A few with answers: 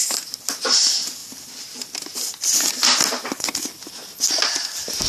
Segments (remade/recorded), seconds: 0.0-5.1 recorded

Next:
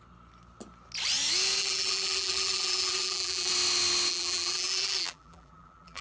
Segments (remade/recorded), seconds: 0.0-1.6 recorded; 1.6-3.5 remade; 3.5-4.1 recorded; 4.1-6.0 remade

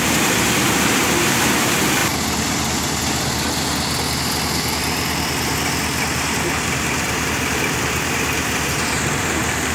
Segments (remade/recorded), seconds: 0.0-2.0 remade; 2.0-6.5 recorded; 6.5-9.7 remade

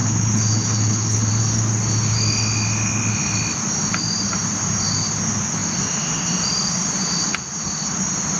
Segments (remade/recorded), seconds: 0.0-1.3 remade; 1.3-8.4 recorded

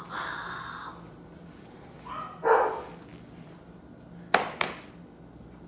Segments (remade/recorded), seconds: 0.0-5.7 recorded

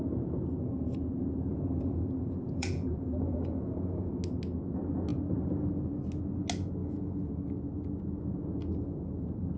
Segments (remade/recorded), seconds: 0.0-1.5 recorded; 1.5-4.1 remade; 4.1-6.8 recorded; 6.8-7.3 remade; 7.3-9.6 recorded

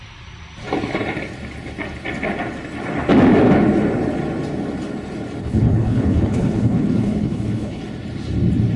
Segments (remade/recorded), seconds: 0.0-5.4 recorded; 5.4-7.8 remade; 7.8-8.8 recorded

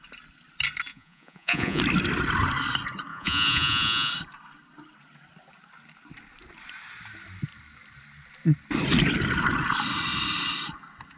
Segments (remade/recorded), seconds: 0.0-0.9 recorded; 0.9-1.8 remade; 1.8-3.1 recorded; 3.1-4.1 remade; 4.1-11.2 recorded